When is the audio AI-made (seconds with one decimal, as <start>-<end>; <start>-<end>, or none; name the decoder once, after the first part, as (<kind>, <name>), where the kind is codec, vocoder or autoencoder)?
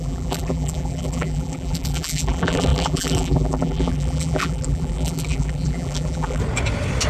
0.0-6.4 (vocoder, BigVGAN v2)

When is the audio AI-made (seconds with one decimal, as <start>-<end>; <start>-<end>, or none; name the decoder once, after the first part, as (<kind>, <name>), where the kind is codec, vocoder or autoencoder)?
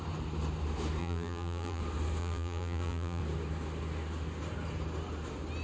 1.0-1.8 (vocoder, BigVGAN v2); 2.2-3.2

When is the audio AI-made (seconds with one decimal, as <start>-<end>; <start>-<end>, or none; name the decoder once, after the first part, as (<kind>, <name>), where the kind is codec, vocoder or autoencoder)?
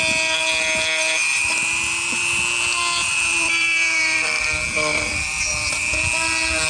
1.2-2.4 (vocoder, BigVGAN v2); 3.0-4.3; 4.9-6.0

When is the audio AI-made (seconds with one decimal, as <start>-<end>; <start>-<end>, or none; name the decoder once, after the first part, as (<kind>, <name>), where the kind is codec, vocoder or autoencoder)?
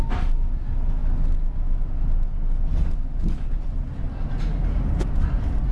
none